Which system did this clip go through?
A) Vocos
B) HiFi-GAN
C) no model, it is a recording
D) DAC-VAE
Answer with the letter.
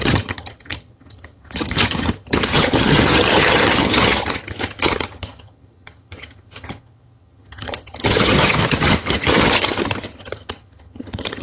B